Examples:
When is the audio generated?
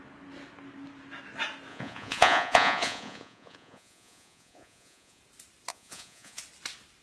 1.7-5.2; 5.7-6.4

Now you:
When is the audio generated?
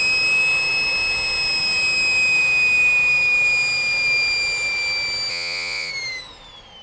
5.3-5.9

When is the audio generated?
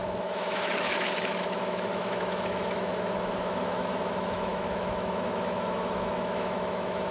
0.0-7.1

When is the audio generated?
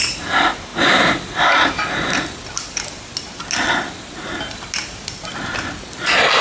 none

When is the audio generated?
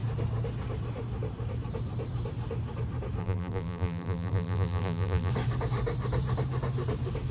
3.2-5.3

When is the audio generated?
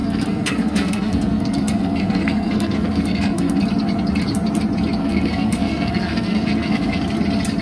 0.0-3.6; 5.0-7.0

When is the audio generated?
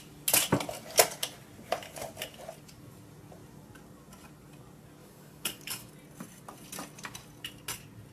5.0-5.9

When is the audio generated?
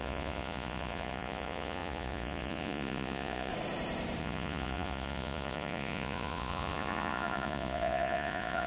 0.0-3.5; 4.2-8.7